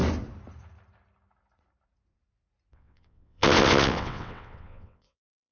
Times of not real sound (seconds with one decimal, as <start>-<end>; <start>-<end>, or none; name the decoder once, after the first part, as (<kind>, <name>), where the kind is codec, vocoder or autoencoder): 2.7-5.5 (vocoder, WaveNeXt)